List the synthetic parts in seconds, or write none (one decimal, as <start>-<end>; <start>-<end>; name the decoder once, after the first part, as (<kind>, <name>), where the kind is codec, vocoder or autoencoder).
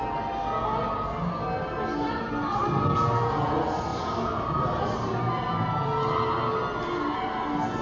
3.9-5.3 (vocoder, BigVGAN v2)